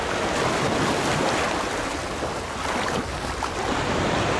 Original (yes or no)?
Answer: yes